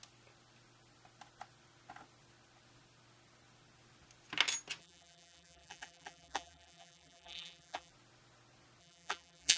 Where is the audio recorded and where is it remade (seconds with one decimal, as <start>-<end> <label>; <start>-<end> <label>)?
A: 0.0-4.8 recorded; 4.8-7.9 remade; 7.9-8.8 recorded; 8.8-9.6 remade